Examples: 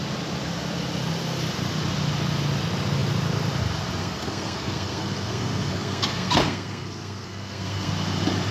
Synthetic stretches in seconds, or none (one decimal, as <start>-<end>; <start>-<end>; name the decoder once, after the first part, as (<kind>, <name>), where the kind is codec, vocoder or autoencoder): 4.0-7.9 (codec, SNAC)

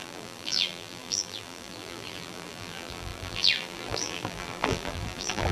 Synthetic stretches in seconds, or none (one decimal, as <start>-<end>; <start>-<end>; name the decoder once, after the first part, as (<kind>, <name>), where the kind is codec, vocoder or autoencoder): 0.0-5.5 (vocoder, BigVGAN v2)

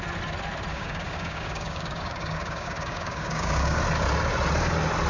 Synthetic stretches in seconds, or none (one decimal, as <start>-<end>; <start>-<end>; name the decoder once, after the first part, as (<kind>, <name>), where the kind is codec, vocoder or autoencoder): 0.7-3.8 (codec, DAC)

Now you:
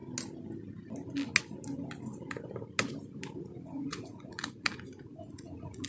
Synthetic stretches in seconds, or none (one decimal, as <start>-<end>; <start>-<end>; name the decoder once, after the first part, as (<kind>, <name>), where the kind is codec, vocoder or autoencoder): 3.4-5.9 (vocoder, Vocos)